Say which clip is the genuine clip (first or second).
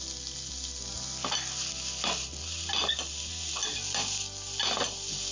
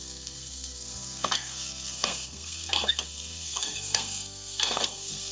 first